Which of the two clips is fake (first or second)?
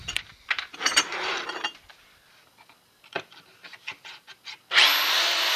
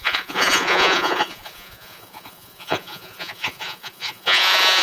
second